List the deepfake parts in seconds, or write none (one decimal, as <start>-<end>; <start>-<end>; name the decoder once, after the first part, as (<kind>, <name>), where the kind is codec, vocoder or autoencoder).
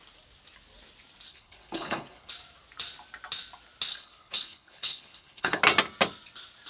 1.3-2.3 (codec, HILCodec); 3.9-5.6